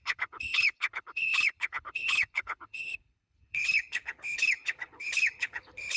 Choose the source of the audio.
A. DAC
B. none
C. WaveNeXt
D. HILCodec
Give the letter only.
D